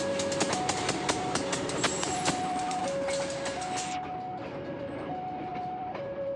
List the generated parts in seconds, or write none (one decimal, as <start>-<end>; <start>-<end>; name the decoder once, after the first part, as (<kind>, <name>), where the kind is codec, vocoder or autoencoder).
0.7-2.8 (vocoder, BigVGAN v2); 5.5-6.4